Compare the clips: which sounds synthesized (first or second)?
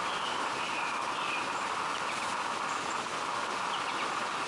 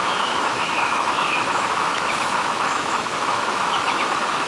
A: second